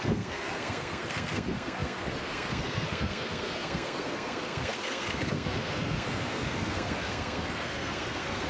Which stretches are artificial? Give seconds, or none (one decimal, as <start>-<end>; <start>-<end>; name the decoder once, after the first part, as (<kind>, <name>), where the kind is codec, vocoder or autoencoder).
0.0-8.5 (codec, SNAC)